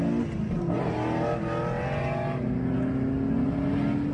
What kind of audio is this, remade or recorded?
recorded